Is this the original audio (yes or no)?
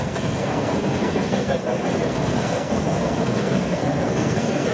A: no